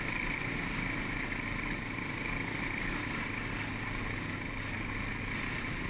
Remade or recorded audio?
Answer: recorded